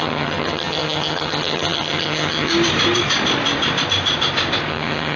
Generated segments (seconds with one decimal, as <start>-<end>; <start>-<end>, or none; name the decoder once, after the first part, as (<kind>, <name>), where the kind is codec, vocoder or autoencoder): 0.0-2.5 (vocoder, HiFi-GAN); 4.7-5.2